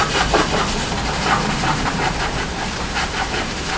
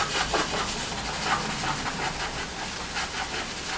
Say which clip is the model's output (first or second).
first